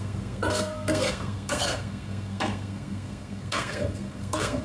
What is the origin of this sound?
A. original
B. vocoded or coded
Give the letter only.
B